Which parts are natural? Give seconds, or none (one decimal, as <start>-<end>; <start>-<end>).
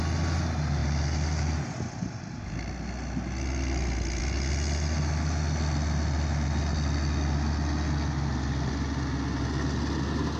0.0-10.4